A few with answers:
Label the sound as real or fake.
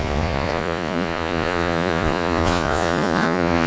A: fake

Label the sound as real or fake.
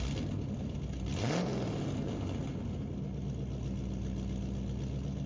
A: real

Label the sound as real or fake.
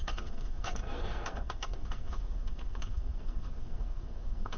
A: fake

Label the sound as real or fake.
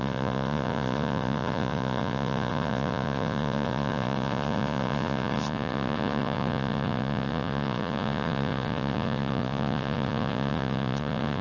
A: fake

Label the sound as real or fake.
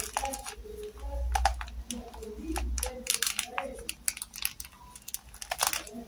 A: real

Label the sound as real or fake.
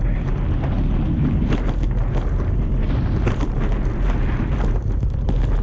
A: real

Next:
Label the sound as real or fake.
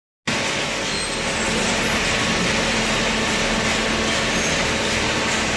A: real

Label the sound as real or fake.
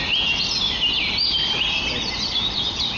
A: real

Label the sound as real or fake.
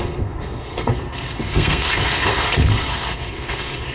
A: fake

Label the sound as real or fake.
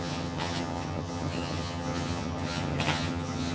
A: fake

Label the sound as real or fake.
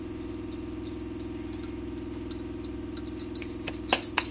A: real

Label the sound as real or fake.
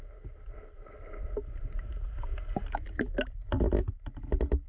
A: real